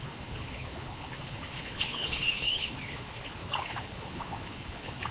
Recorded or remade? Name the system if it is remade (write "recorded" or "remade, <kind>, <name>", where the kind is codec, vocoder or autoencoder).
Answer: remade, codec, HILCodec